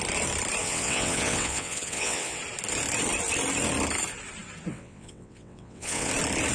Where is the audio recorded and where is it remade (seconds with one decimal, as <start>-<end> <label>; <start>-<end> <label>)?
0.0-0.6 recorded; 0.6-2.4 remade; 2.4-4.7 recorded; 4.7-6.1 remade; 6.1-6.5 recorded